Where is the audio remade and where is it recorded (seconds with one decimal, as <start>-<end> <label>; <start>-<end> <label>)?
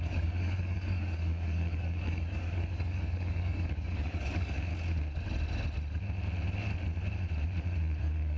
0.0-4.7 remade; 4.7-8.0 recorded; 8.0-8.4 remade